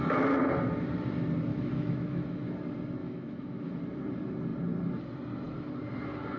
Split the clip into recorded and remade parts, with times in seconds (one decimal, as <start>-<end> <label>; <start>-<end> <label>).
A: 0.0-1.5 recorded; 1.5-2.5 remade; 2.5-3.0 recorded; 3.0-3.8 remade; 3.8-6.4 recorded